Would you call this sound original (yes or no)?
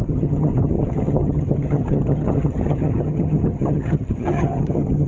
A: no